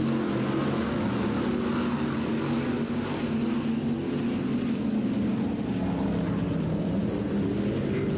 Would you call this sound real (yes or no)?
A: yes